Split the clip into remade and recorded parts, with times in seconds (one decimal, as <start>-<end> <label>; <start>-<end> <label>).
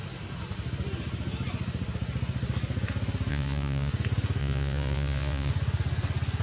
0.0-3.3 recorded; 3.3-3.9 remade; 3.9-4.4 recorded; 4.4-5.5 remade; 5.5-6.4 recorded